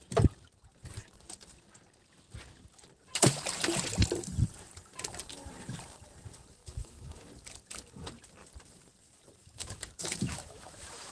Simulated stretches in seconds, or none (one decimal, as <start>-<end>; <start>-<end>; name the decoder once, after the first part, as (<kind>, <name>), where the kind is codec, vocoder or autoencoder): 6.6-7.3 (autoencoder, DAC-VAE); 9.4-11.1